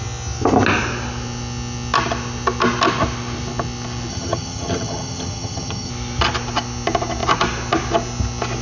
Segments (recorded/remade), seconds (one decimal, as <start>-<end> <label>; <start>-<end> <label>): 0.0-4.1 recorded; 4.1-5.9 remade; 5.9-8.6 recorded